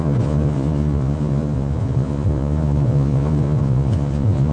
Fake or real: fake